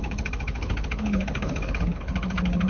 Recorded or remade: remade